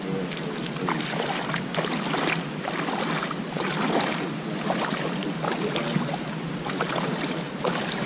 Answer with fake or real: real